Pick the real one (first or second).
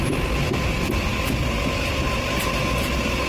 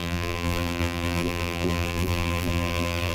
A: first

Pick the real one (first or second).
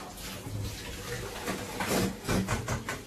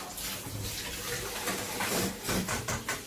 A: first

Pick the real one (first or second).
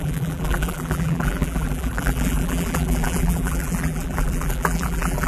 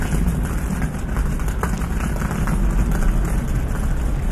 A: second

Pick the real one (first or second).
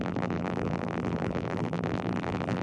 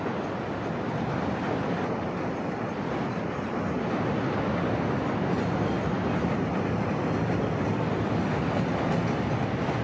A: second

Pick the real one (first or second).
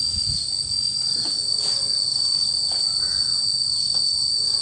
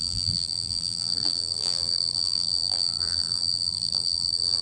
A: first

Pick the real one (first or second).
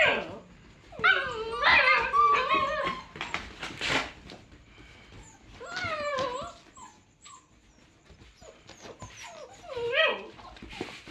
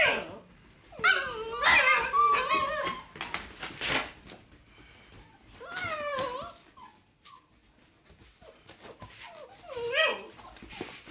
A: second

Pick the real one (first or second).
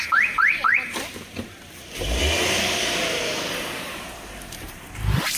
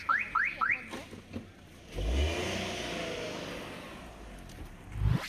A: second